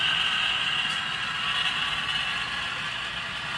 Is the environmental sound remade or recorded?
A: recorded